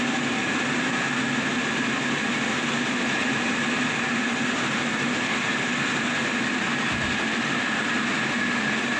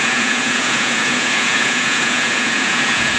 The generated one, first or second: second